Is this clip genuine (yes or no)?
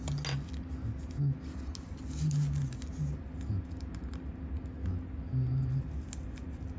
yes